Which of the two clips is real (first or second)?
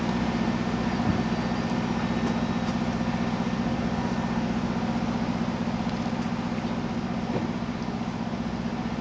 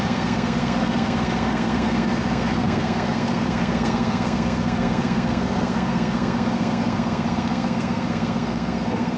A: first